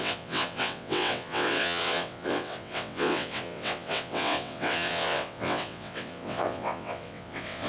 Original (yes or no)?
no